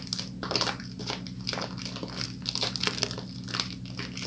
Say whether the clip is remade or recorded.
recorded